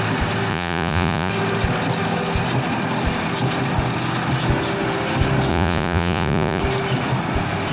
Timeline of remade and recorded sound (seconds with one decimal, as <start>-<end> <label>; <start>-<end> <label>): 0.0-0.5 recorded; 0.5-1.3 remade; 1.3-5.5 recorded; 5.5-6.6 remade; 6.6-7.7 recorded

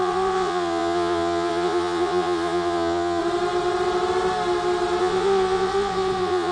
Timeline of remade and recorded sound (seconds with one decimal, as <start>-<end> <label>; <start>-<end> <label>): 0.0-3.2 remade; 3.2-5.0 recorded; 5.0-6.5 remade